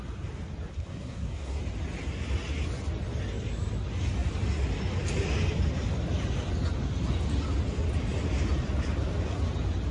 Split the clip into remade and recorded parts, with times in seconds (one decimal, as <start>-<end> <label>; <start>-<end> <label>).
0.0-0.7 recorded; 0.7-1.6 remade; 1.6-9.9 recorded